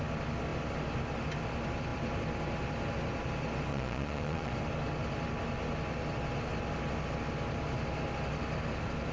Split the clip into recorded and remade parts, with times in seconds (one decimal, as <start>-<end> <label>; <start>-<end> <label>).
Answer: 0.0-3.7 recorded; 3.7-4.5 remade; 4.5-9.1 recorded